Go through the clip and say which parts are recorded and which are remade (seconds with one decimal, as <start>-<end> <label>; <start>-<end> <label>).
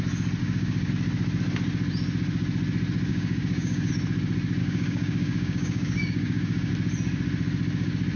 0.0-0.4 recorded; 0.4-0.9 remade; 0.9-3.1 recorded; 3.1-3.9 remade; 3.9-4.6 recorded; 4.6-6.7 remade; 6.7-8.2 recorded